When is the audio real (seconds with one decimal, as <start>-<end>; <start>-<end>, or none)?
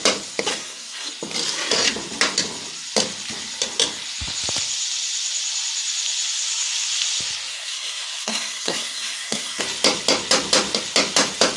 0.0-0.5; 1.1-7.5; 9.6-11.6